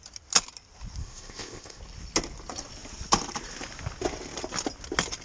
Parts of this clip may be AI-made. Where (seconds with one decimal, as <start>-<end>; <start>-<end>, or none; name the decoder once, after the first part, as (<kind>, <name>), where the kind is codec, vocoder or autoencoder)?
1.0-1.8 (codec, ZipCodec)